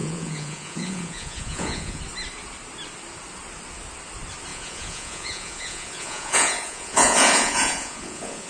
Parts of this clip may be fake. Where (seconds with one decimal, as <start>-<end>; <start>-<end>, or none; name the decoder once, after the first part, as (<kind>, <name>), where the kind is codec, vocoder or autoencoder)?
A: 0.0-2.0 (vocoder, Vocos); 4.5-8.5